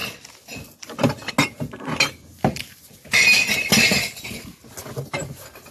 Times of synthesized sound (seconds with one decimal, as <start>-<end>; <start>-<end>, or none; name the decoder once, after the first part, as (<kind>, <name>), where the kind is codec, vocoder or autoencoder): none